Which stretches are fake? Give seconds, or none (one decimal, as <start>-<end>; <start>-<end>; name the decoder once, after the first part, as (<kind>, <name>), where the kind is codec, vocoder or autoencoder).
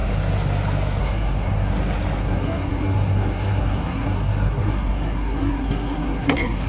1.0-1.7 (codec, SNAC); 2.2-6.7